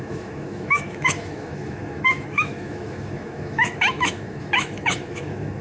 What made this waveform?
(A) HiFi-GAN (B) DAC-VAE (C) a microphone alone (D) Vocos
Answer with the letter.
B